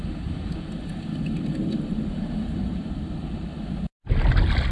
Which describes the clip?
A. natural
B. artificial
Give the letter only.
A